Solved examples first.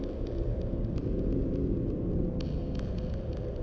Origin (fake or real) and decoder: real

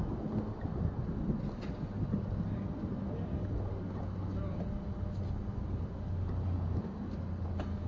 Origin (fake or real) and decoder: real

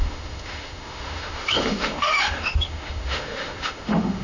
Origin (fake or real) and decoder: fake, autoencoder, DAC-VAE